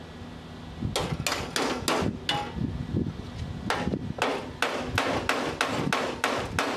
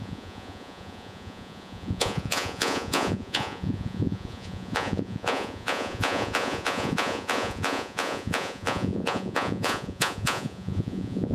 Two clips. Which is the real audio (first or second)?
first